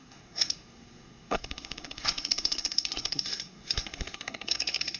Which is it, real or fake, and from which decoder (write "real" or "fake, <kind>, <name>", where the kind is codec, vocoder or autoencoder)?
fake, codec, SNAC